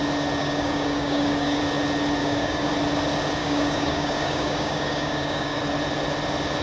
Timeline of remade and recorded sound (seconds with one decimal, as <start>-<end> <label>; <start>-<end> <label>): 0.0-0.4 recorded; 0.4-1.6 remade; 1.6-2.2 recorded; 2.2-2.7 remade; 2.7-3.4 recorded; 3.4-5.6 remade; 5.6-6.6 recorded